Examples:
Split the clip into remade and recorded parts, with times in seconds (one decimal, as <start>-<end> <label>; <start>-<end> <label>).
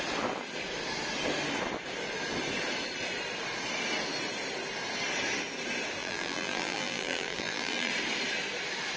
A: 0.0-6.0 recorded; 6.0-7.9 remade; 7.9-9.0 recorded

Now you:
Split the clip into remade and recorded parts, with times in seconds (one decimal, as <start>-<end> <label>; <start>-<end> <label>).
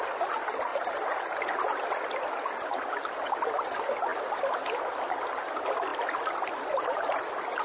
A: 0.0-7.6 recorded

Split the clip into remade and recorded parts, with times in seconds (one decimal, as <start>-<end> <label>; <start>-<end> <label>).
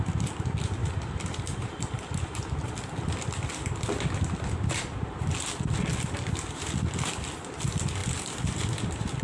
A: 0.0-0.8 recorded; 0.8-2.7 remade; 2.7-9.2 recorded